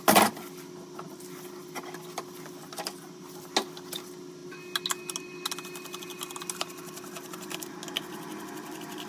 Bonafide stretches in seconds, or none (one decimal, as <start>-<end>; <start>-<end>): 0.0-9.1